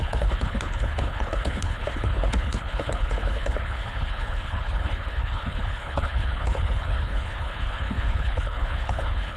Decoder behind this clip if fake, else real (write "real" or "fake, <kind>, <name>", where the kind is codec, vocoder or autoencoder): fake, codec, HILCodec